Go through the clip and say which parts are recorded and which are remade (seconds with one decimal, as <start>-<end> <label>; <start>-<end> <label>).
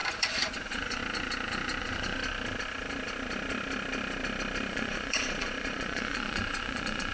0.0-1.0 remade; 1.0-1.8 recorded; 1.8-2.2 remade; 2.2-4.7 recorded; 4.7-7.1 remade